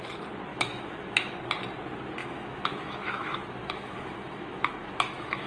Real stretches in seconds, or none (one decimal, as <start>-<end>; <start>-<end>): 0.0-0.5; 1.4-2.2

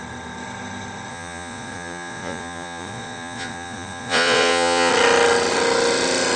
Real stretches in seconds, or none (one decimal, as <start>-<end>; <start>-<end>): 0.0-1.1; 4.9-6.4

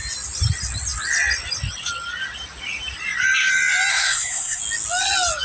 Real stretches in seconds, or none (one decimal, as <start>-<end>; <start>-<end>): 0.0-3.9; 4.6-5.4

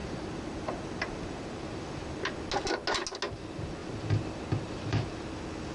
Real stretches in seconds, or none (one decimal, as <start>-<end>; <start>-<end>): 0.0-5.7

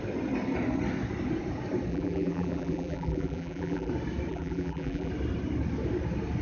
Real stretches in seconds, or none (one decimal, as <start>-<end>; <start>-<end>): 0.0-1.9; 3.9-4.3; 5.1-6.4